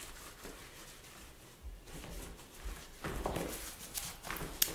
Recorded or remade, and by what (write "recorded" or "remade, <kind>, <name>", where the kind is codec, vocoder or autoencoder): recorded